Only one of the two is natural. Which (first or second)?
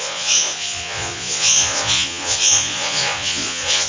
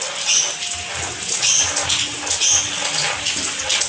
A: second